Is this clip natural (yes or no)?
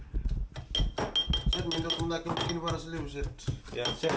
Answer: yes